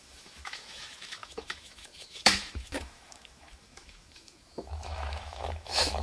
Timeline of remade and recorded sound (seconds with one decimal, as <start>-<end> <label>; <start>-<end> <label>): 0.0-6.0 remade